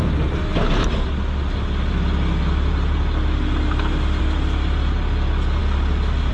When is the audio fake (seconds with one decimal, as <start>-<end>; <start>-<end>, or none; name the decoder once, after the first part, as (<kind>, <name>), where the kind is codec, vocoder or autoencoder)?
none